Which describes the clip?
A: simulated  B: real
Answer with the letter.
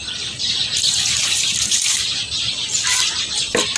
B